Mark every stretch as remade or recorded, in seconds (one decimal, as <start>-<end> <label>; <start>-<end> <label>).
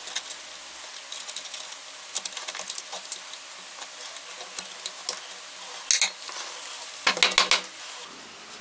0.0-8.6 recorded